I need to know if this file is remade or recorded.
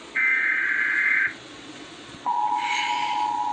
remade